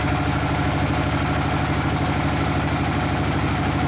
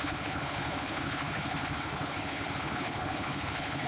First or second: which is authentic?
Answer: first